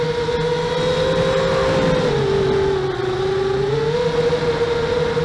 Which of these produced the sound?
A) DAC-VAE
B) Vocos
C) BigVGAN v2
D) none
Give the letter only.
D